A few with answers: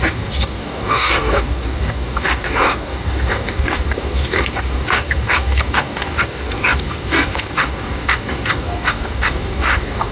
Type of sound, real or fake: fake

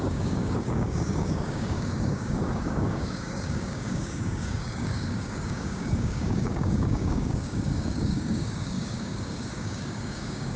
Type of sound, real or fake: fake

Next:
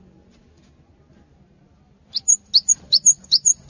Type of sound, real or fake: real